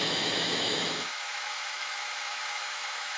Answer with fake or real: fake